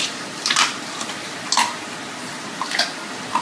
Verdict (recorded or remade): recorded